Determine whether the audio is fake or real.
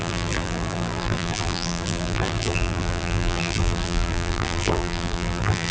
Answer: fake